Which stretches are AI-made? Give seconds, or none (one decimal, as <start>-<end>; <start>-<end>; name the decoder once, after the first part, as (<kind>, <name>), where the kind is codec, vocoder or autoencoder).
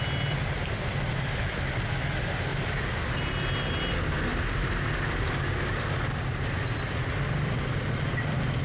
4.3-5.6 (vocoder, BigVGAN v2)